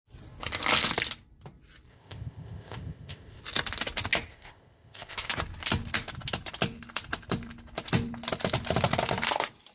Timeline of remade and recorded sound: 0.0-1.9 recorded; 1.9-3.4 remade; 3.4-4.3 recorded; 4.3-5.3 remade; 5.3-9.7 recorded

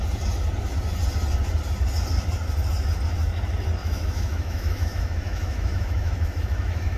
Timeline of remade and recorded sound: 0.0-3.8 recorded; 3.8-7.0 remade